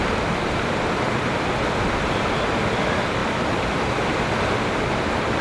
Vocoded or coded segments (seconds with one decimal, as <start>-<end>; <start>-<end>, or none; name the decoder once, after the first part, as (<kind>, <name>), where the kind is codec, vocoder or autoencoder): none